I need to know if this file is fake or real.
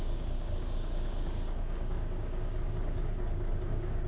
fake